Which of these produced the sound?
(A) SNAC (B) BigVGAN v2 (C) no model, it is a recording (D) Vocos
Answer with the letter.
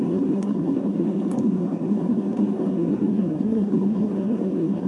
A